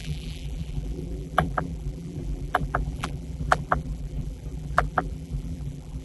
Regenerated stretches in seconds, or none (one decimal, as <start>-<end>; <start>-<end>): 0.0-6.0